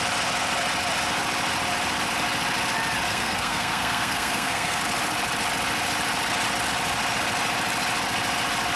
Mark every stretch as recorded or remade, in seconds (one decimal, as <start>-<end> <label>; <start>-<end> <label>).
0.0-3.1 recorded; 3.1-4.8 remade; 4.8-8.8 recorded